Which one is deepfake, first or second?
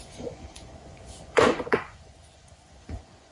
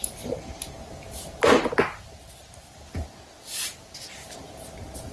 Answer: first